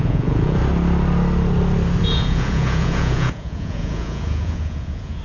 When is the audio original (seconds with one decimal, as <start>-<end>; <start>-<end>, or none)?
0.6-2.0

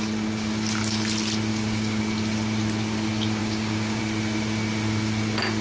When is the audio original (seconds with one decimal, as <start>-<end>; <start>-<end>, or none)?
0.0-1.5; 2.0-3.4; 4.0-5.6

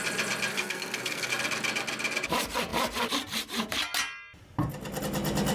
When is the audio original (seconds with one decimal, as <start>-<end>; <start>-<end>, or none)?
0.0-0.5; 1.3-5.5

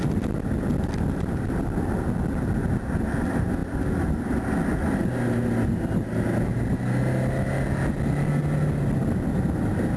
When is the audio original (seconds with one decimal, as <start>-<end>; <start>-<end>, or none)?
0.0-10.0

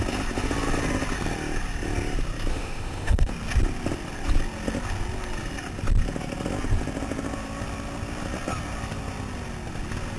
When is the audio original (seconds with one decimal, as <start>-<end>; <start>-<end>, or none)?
0.0-2.5; 3.3-10.2

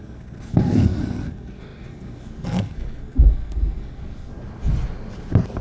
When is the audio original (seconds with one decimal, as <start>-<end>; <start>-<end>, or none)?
4.3-5.6